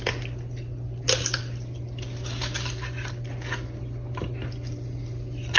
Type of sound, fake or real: real